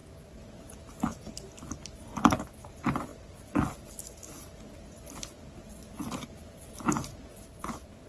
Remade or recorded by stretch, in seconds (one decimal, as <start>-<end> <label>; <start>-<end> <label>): 0.0-8.1 recorded